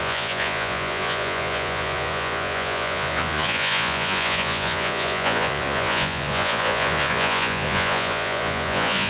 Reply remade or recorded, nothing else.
remade